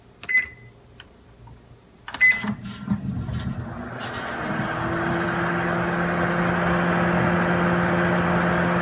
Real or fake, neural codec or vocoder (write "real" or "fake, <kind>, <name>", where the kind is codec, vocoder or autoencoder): real